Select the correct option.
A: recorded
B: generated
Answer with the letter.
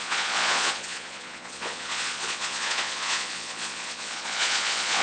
B